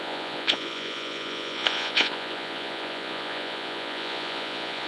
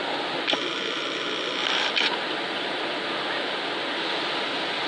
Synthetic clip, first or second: first